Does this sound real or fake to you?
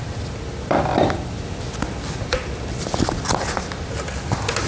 real